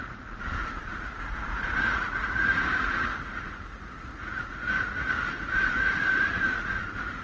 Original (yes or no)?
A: no